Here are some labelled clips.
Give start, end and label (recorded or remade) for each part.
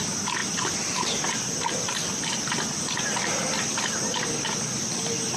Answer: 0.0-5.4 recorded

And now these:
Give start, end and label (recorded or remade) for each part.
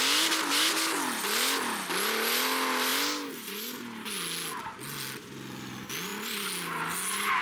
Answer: 0.0-7.4 recorded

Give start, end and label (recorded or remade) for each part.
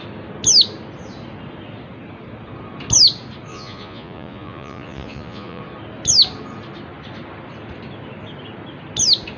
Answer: 0.0-3.5 recorded; 3.5-5.6 remade; 5.6-9.4 recorded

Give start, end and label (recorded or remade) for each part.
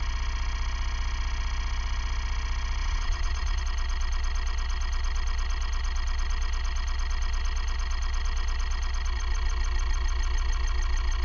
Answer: 0.0-2.8 recorded; 2.8-3.6 remade; 3.6-11.2 recorded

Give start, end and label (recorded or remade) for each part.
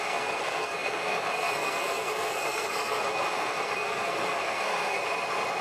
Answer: 0.0-5.0 remade; 5.0-5.6 recorded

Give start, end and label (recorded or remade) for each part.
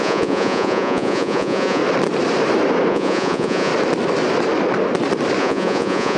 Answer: 0.0-1.8 remade; 1.8-2.9 recorded; 2.9-3.7 remade; 3.7-5.4 recorded; 5.4-6.2 remade